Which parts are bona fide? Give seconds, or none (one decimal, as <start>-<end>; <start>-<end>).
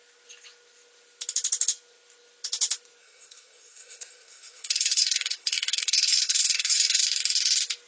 0.0-3.0; 7.0-7.9